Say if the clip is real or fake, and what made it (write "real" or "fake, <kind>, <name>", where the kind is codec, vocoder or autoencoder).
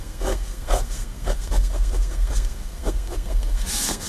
fake, codec, SNAC